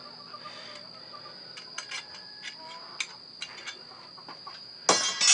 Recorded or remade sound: recorded